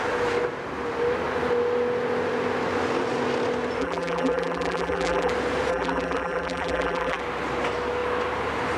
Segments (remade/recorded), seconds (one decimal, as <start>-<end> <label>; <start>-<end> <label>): 0.0-3.8 recorded; 3.8-5.3 remade; 5.3-5.7 recorded; 5.7-7.2 remade; 7.2-8.8 recorded